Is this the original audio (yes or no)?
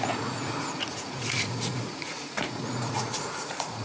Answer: no